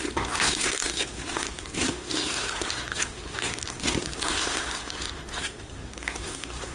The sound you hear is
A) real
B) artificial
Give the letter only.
B